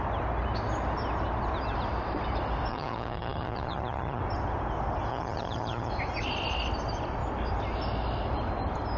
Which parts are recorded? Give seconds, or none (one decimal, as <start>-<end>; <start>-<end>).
0.0-2.7; 4.2-5.1; 5.9-9.0